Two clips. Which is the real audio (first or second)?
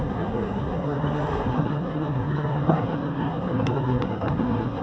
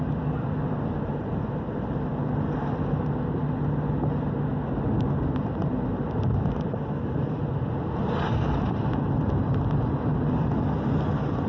second